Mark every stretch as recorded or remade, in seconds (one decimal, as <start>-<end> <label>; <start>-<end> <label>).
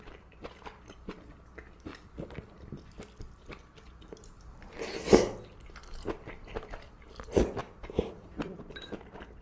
0.0-7.6 recorded; 7.6-9.4 remade